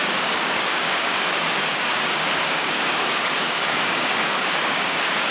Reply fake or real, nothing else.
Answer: fake